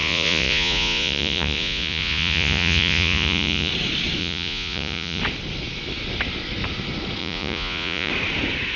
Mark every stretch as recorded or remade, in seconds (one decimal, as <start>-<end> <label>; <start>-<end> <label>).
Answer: 0.0-3.7 remade; 3.7-4.2 recorded; 4.2-5.2 remade; 5.2-7.2 recorded; 7.2-8.1 remade; 8.1-8.8 recorded

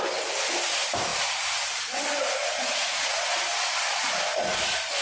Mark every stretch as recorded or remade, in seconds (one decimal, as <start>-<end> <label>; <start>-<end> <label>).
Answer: 0.0-2.4 recorded; 2.4-3.2 remade; 3.2-5.0 recorded

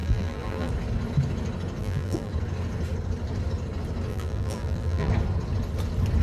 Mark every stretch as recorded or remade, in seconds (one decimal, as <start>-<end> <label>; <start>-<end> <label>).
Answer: 0.0-0.7 remade; 0.7-1.8 recorded; 1.8-2.3 remade; 2.3-4.1 recorded; 4.1-5.1 remade; 5.1-6.2 recorded

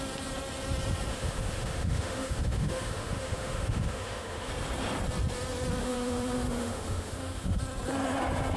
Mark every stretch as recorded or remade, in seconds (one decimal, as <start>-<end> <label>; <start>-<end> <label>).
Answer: 0.0-1.1 recorded; 1.1-4.5 remade; 4.5-5.8 recorded; 5.8-7.6 remade; 7.6-8.6 recorded

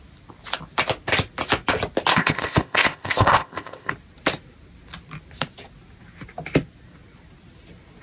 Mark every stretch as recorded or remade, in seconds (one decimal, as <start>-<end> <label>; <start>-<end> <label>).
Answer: 0.0-2.1 recorded; 2.1-3.9 remade; 3.9-8.0 recorded

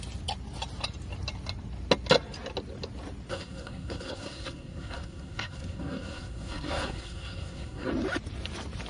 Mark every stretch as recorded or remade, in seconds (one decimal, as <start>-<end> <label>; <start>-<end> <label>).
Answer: 0.0-3.3 recorded; 3.3-7.9 remade; 7.9-8.9 recorded

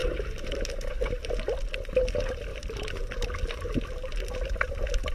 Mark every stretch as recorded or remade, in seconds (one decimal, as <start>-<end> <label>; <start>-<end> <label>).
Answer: 0.0-1.3 remade; 1.3-2.5 recorded; 2.5-3.0 remade; 3.0-5.1 recorded

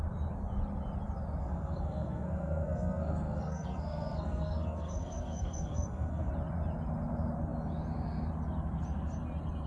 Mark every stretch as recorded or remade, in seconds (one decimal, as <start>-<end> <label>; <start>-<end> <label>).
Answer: 0.0-1.4 recorded; 1.4-6.3 remade; 6.3-9.7 recorded